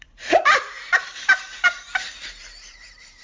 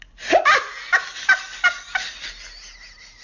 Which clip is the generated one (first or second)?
first